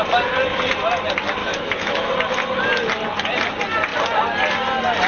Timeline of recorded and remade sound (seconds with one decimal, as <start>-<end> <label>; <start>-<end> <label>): 0.0-1.4 recorded; 1.4-2.1 remade; 2.1-5.1 recorded

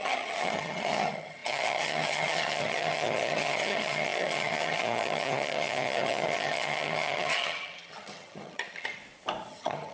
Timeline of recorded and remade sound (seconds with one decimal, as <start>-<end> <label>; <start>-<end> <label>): 0.0-9.0 remade; 9.0-9.5 recorded; 9.5-9.9 remade

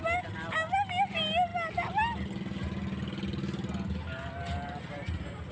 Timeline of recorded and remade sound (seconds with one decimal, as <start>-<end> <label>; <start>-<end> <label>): 0.0-5.5 recorded

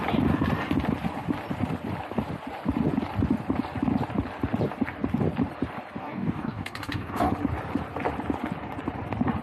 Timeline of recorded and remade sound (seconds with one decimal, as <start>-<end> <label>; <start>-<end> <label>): 0.0-6.0 recorded; 6.0-7.3 remade; 7.3-9.4 recorded